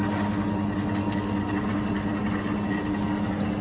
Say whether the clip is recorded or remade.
recorded